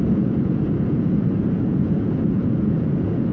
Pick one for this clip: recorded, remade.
remade